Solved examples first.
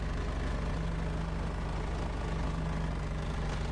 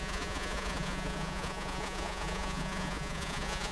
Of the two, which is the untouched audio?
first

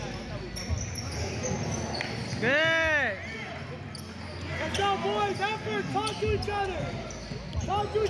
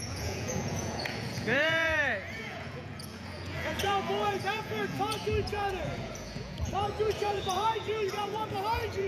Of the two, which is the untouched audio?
first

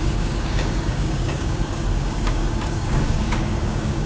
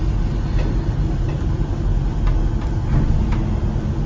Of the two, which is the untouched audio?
second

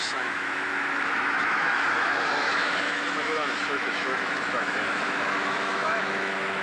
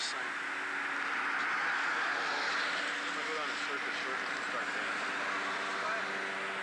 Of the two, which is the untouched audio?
second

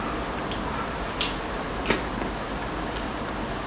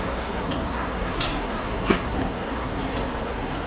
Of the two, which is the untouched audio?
first